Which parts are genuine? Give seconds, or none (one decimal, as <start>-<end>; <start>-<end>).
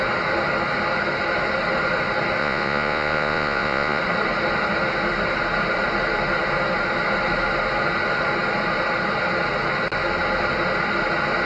0.0-2.4; 4.0-11.5